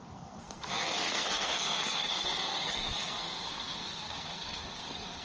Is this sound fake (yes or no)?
yes